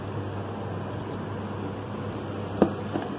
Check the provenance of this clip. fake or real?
real